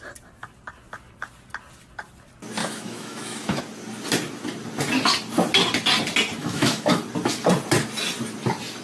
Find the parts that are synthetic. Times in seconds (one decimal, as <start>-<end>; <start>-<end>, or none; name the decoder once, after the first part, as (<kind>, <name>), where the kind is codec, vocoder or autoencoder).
2.6-3.6 (autoencoder, DAC-VAE); 6.4-7.0